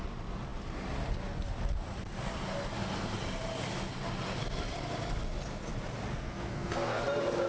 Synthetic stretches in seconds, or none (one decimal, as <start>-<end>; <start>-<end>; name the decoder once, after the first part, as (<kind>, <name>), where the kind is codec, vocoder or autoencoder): 6.1-7.0 (codec, SNAC)